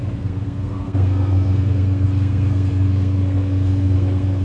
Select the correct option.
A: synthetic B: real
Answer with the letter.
A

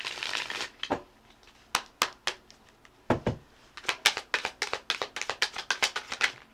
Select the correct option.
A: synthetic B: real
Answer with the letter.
B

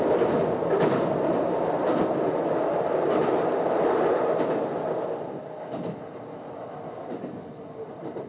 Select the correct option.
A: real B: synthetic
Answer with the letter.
A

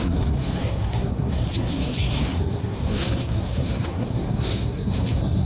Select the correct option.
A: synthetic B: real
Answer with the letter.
A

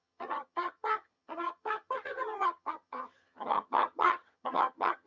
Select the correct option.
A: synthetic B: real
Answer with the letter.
A